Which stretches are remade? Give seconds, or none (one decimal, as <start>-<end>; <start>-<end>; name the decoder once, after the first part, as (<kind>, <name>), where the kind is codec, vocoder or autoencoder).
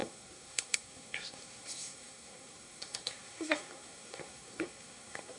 0.0-5.4 (codec, SNAC)